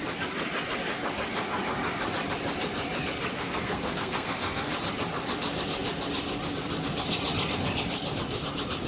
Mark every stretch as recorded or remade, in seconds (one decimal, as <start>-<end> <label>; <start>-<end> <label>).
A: 0.0-3.3 recorded; 3.3-4.7 remade; 4.7-8.9 recorded